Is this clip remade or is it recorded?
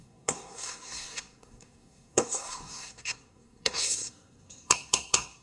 remade